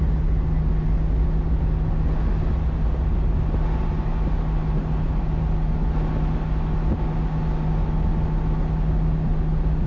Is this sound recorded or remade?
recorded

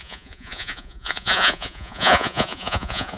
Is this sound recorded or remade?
remade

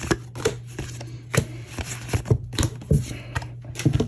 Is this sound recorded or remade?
recorded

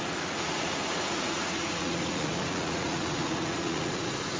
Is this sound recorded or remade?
remade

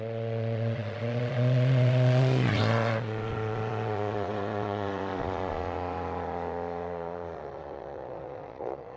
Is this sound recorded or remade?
remade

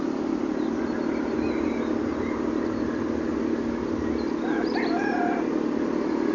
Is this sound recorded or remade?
recorded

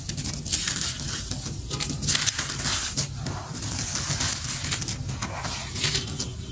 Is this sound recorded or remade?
recorded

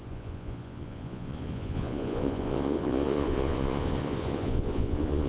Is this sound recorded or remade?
remade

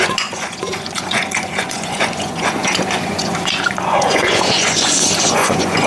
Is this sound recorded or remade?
remade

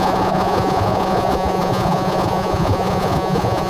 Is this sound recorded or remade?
remade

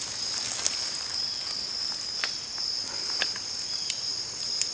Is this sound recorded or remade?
recorded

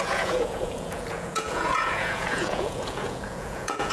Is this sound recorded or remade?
remade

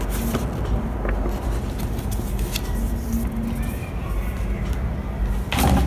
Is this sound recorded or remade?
recorded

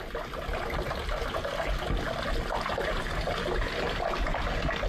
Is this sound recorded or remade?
recorded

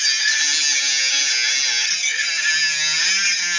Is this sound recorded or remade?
recorded